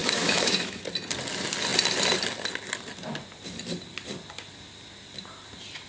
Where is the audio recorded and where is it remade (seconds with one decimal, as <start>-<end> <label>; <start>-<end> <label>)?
0.0-0.8 remade; 0.8-5.9 recorded